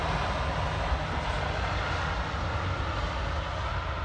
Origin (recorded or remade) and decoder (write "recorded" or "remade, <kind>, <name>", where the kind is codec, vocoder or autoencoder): recorded